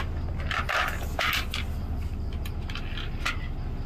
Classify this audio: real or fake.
real